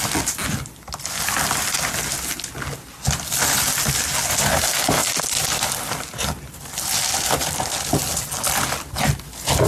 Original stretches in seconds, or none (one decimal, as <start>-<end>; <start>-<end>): 0.0-9.7